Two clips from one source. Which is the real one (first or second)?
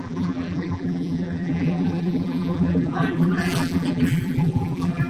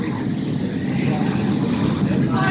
second